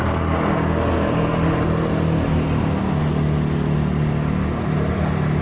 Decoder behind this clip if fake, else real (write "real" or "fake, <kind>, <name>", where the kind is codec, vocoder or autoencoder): real